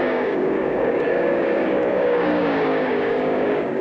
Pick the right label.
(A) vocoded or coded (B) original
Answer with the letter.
A